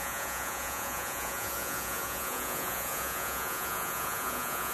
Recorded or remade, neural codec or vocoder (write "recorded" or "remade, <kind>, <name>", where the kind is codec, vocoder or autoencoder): remade, vocoder, Vocos